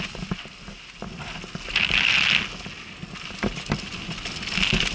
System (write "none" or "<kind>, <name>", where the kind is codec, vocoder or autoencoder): none